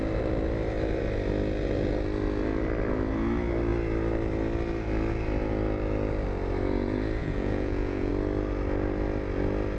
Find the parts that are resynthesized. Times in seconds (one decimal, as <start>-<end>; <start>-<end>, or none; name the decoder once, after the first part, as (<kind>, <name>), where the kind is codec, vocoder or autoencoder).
7.2-8.1 (vocoder, Vocos)